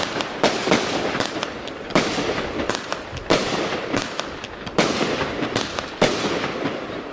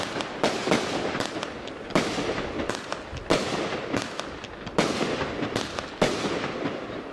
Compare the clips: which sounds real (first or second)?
second